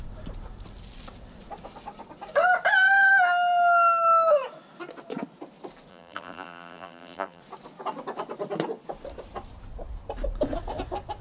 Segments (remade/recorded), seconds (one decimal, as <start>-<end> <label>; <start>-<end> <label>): 0.0-5.9 recorded; 5.9-7.4 remade; 7.4-11.2 recorded